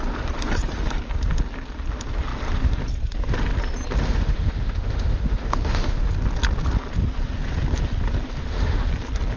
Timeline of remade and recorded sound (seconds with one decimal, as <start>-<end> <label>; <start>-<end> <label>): 0.0-4.0 recorded; 4.0-6.1 remade; 6.1-8.4 recorded; 8.4-8.9 remade; 8.9-9.4 recorded

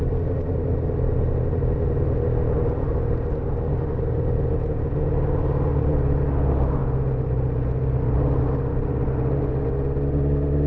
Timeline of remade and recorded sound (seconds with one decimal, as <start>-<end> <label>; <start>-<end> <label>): 0.0-10.7 recorded

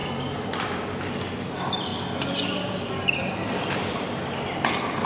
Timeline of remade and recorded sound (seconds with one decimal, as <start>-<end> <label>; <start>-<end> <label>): 0.0-5.1 recorded

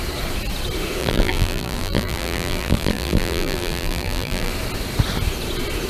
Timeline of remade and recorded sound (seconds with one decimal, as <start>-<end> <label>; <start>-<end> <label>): 0.0-1.0 recorded; 1.0-4.5 remade; 4.5-5.9 recorded